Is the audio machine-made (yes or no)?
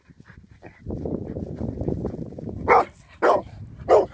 no